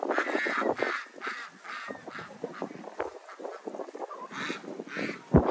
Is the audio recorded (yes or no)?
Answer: yes